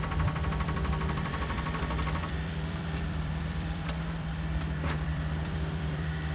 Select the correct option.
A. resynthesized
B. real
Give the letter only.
A